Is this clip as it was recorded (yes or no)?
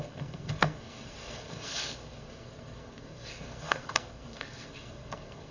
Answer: no